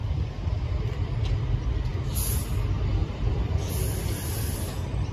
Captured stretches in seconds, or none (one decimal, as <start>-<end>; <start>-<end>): 1.4-3.0; 3.6-5.1